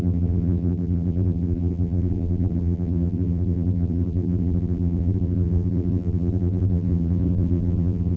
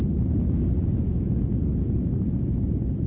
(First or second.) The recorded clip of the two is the second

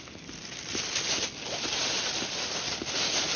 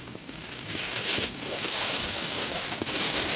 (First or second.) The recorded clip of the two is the first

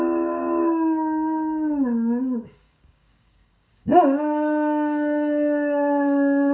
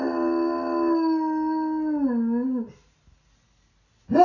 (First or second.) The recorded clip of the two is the second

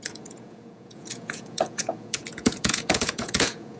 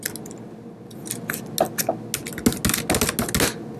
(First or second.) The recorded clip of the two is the second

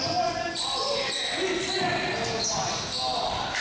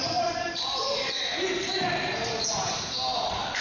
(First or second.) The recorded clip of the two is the first